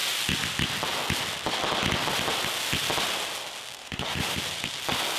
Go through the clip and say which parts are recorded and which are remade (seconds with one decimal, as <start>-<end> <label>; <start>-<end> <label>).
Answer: 0.0-3.8 recorded; 3.8-4.4 remade; 4.4-5.2 recorded